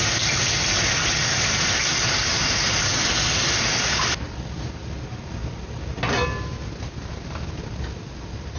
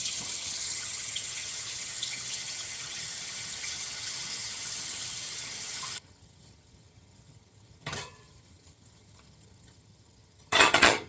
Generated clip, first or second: second